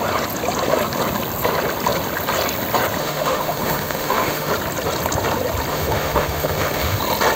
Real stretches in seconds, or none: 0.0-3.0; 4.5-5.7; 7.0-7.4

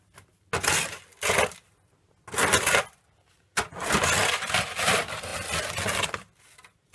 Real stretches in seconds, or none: 0.0-6.9

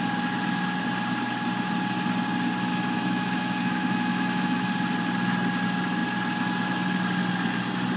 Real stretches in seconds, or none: 0.0-2.7; 4.7-8.0